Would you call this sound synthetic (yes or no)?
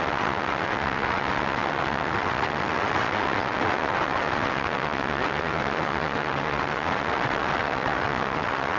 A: yes